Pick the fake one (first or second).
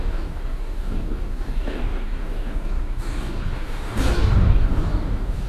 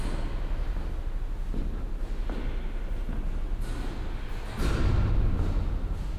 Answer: first